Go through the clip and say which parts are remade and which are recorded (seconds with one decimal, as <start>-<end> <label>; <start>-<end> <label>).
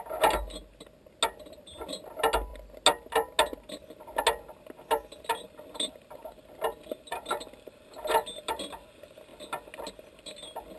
0.0-10.8 recorded